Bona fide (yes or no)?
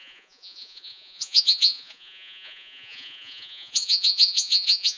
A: no